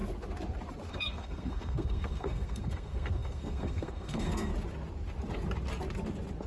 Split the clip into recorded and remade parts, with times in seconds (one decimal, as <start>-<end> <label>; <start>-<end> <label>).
0.0-0.9 recorded; 0.9-4.5 remade; 4.5-6.5 recorded